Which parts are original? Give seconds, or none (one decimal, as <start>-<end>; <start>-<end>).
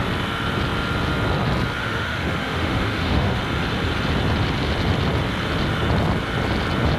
0.0-1.8; 3.4-7.0